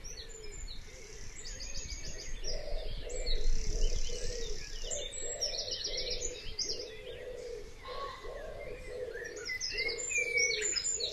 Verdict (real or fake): real